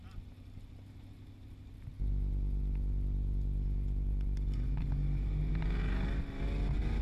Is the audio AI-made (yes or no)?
no